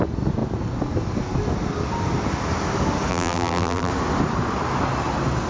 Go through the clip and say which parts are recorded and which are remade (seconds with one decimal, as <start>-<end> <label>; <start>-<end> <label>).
0.0-3.1 recorded; 3.1-3.9 remade; 3.9-5.5 recorded